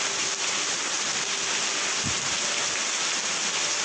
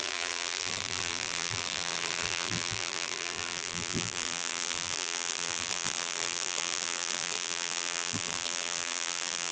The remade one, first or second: second